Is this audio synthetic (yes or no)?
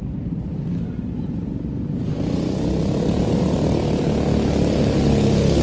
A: no